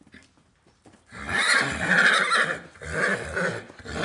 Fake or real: real